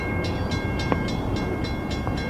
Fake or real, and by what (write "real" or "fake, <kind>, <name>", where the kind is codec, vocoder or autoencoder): real